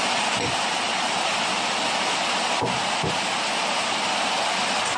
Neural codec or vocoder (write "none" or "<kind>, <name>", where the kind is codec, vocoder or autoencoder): none